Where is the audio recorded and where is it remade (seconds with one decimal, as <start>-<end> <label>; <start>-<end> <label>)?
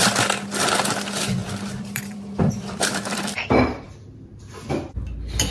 0.0-1.4 recorded; 1.4-4.7 remade; 4.7-5.5 recorded